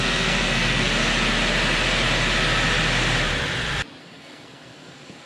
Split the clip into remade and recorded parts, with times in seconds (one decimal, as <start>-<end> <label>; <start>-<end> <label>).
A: 0.0-0.9 remade; 0.9-4.0 recorded; 4.0-5.3 remade